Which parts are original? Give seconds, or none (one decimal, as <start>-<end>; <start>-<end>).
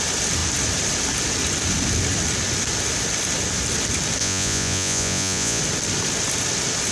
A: 0.0-4.2; 5.6-6.9